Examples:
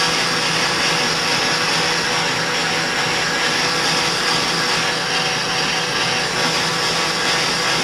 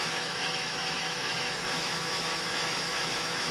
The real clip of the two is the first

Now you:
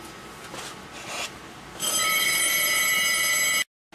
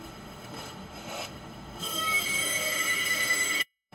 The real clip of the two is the first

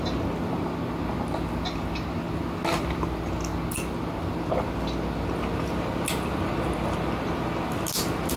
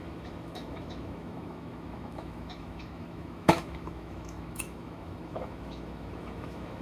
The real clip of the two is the first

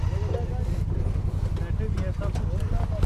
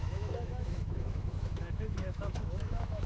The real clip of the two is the first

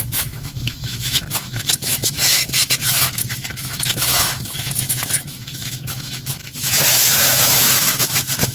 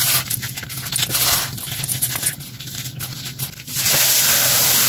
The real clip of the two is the second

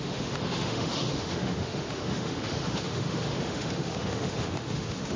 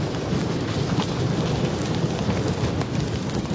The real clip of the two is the second